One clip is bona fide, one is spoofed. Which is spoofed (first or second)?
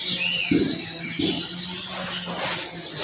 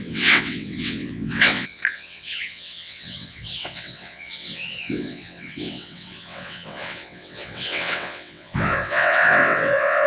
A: second